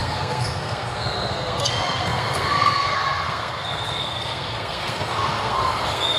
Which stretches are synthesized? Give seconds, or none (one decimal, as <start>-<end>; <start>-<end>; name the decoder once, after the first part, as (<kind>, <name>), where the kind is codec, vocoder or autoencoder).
0.0-6.2 (codec, SNAC)